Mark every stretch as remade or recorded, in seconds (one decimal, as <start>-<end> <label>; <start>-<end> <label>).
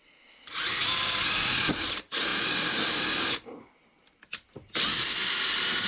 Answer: 0.0-5.9 recorded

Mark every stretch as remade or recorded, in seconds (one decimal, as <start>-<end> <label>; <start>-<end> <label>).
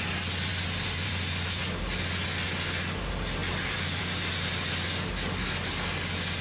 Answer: 0.0-0.5 recorded; 0.5-1.8 remade; 1.8-3.4 recorded; 3.4-4.0 remade; 4.0-6.4 recorded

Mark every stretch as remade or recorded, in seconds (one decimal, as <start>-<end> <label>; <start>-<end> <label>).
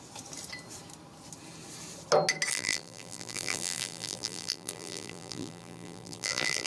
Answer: 0.0-2.5 recorded; 2.5-6.7 remade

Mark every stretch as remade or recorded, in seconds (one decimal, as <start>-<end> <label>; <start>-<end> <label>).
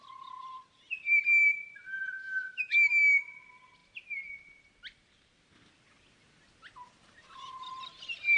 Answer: 0.0-2.2 recorded; 2.2-2.9 remade; 2.9-8.4 recorded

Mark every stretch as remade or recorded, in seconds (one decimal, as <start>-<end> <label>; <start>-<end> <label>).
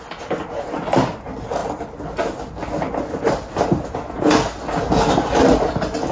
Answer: 0.0-6.1 recorded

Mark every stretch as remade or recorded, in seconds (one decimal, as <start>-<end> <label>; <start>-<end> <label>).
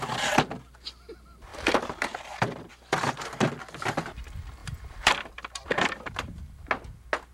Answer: 0.0-1.5 recorded; 1.5-2.7 remade; 2.7-4.6 recorded; 4.6-6.7 remade; 6.7-7.3 recorded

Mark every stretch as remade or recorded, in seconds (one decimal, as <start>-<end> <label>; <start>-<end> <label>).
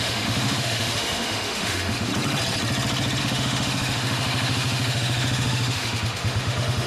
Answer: 0.0-2.1 remade; 2.1-3.2 recorded; 3.2-6.9 remade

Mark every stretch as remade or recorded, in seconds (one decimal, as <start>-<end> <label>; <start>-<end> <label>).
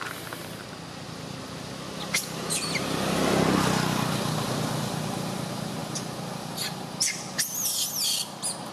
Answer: 0.0-8.7 recorded